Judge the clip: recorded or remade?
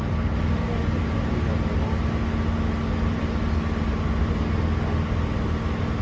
recorded